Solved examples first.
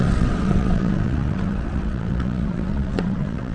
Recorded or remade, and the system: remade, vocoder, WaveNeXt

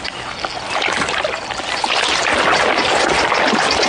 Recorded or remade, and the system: recorded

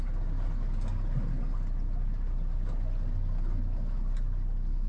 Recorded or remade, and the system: recorded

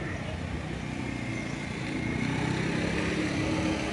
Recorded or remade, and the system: recorded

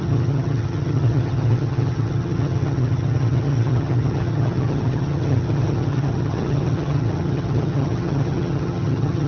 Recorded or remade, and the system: remade, vocoder, HiFi-GAN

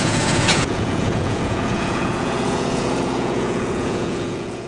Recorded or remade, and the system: remade, vocoder, Vocos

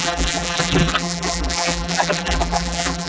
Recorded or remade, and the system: remade, vocoder, BigVGAN v2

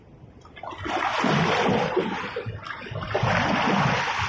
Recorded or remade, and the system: recorded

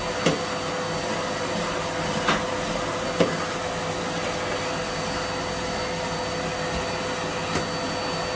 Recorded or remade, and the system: recorded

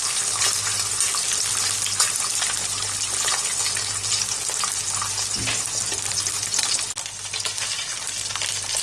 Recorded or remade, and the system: recorded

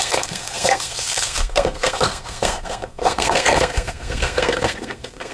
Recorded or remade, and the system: remade, codec, SNAC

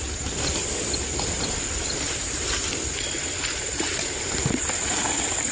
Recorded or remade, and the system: remade, vocoder, BigVGAN v2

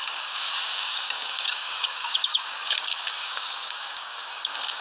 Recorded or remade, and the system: remade, codec, DAC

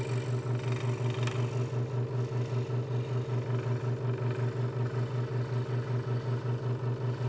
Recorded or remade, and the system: recorded